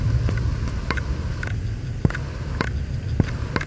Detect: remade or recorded recorded